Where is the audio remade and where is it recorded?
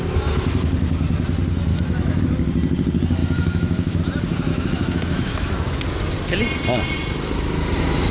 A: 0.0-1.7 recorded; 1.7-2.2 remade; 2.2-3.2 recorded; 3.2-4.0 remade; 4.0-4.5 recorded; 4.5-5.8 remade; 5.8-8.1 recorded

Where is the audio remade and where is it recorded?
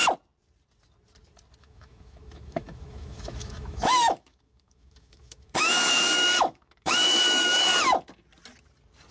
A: 0.0-1.6 recorded; 1.6-7.7 remade; 7.7-9.1 recorded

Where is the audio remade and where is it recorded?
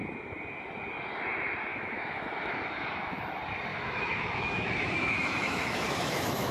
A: 0.0-1.7 recorded; 1.7-3.2 remade; 3.2-3.7 recorded; 3.7-6.5 remade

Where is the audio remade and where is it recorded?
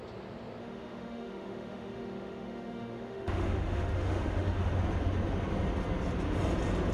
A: 0.0-0.6 recorded; 0.6-4.7 remade; 4.7-6.9 recorded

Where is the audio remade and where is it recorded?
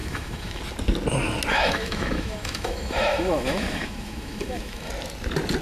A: 0.0-0.6 remade; 0.6-1.5 recorded; 1.5-4.9 remade; 4.9-5.6 recorded